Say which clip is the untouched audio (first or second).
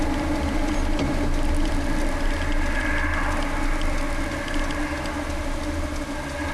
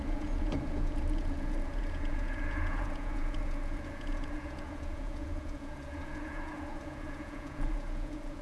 first